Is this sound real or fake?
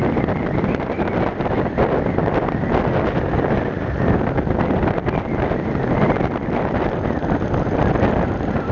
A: real